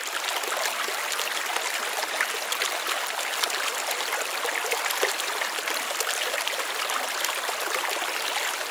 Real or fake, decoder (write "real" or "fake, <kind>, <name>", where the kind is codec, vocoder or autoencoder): real